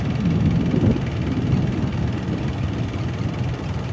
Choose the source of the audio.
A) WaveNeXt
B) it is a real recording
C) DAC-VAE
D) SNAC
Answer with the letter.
B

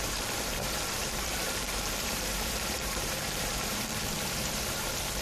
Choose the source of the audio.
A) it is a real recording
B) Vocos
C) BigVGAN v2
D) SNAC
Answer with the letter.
C